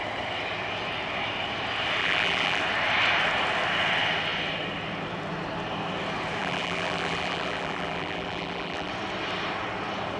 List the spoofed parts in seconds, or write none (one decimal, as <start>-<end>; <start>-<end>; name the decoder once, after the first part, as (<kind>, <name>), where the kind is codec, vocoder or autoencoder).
2.0-2.6 (vocoder, BigVGAN v2); 6.4-8.9